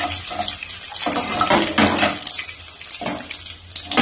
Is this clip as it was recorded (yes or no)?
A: yes